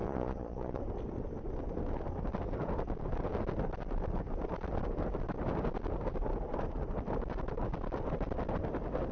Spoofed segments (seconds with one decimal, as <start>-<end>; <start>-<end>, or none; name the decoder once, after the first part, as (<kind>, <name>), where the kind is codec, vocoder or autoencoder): 0.0-0.8 (vocoder, Vocos)